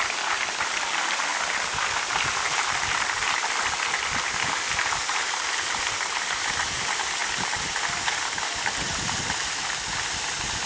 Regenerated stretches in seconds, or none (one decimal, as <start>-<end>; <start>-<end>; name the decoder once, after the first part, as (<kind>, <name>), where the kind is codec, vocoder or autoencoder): none